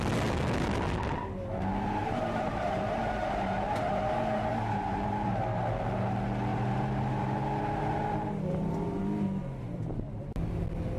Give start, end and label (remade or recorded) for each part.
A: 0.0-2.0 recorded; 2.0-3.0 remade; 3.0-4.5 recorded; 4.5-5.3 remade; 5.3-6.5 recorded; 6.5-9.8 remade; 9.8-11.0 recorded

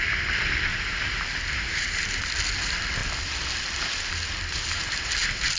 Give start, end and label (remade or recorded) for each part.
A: 0.0-0.7 recorded; 0.7-2.3 remade; 2.3-5.6 recorded

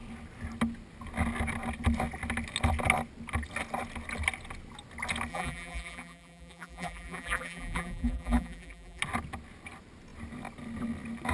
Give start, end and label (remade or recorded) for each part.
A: 0.0-5.3 recorded; 5.3-9.0 remade; 9.0-11.3 recorded